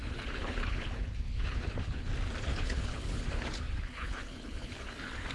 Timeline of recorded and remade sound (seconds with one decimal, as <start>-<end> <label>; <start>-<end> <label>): 0.0-2.1 remade; 2.1-2.5 recorded; 2.5-5.3 remade